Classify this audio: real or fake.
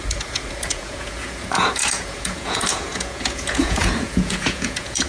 fake